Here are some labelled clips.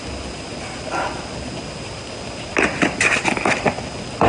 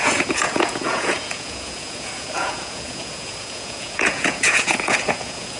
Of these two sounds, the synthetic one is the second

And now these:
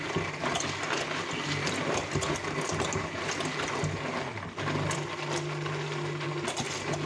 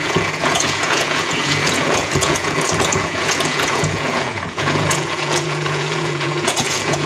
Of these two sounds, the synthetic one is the second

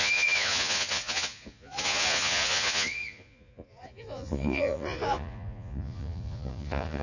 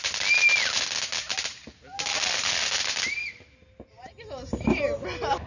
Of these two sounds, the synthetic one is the first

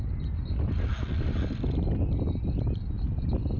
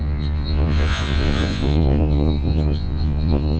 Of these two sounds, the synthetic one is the second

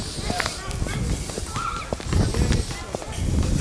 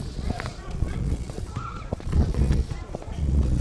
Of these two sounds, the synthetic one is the second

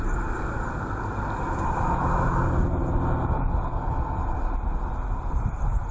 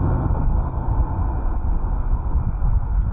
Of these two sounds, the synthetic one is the second